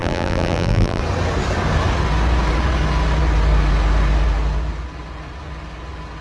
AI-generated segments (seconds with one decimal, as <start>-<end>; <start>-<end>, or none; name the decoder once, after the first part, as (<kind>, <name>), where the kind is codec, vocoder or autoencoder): 0.0-1.0 (vocoder, BigVGAN v2)